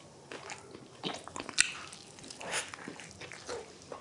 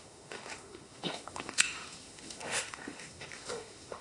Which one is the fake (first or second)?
second